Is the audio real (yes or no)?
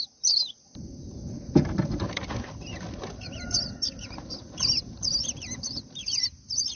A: yes